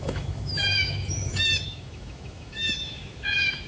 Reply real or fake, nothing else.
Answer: fake